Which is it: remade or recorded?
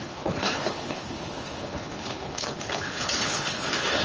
remade